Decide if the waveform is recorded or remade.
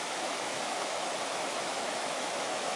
remade